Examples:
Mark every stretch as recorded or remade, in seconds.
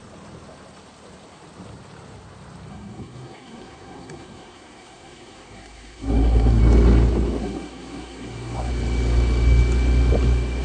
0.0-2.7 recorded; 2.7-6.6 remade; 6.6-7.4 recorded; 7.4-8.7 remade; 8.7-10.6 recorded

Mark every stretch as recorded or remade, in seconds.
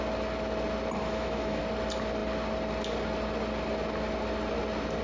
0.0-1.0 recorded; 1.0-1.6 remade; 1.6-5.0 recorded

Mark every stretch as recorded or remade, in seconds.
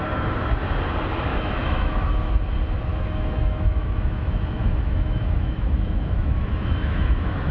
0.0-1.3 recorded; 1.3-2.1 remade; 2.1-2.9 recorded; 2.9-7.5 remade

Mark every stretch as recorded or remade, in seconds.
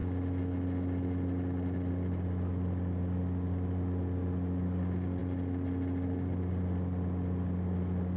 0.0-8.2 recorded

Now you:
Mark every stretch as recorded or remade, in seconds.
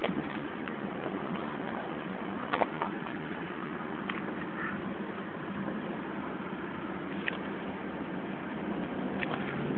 0.0-4.0 remade; 4.0-9.8 recorded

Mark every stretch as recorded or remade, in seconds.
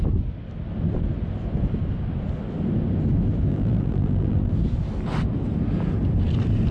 0.0-3.5 recorded; 3.5-4.5 remade; 4.5-6.7 recorded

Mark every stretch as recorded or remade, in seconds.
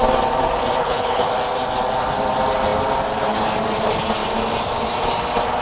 0.0-0.8 recorded; 0.8-1.3 remade; 1.3-5.6 recorded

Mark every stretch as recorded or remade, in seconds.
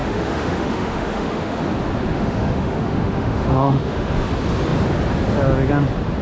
0.0-1.6 remade; 1.6-2.1 recorded; 2.1-4.3 remade; 4.3-6.2 recorded